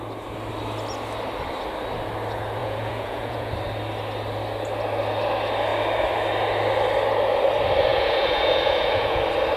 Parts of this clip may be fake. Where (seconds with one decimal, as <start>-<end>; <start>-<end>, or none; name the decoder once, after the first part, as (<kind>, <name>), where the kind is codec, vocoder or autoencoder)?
2.6-3.5 (vocoder, Vocos); 7.9-9.2